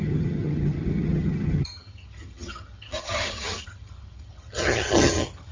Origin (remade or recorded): remade